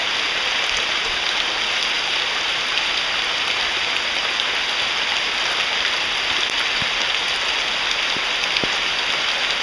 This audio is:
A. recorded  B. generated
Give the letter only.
A